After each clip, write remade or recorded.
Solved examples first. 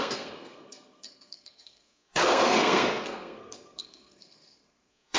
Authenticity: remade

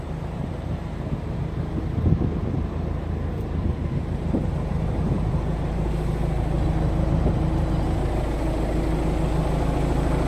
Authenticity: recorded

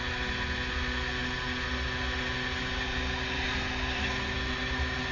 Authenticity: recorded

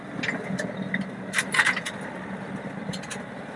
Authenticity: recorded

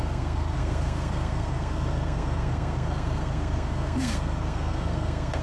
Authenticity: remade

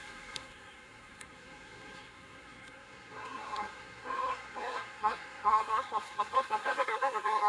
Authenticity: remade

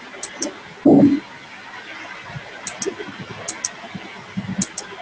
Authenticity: recorded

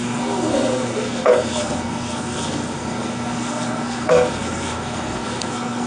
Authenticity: remade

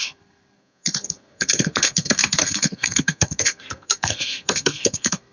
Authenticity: remade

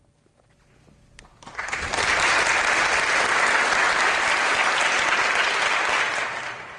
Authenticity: recorded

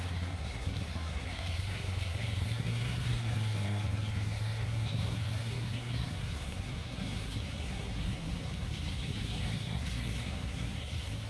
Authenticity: remade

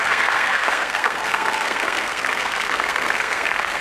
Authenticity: remade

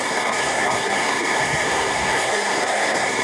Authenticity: remade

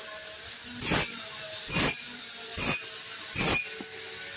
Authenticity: recorded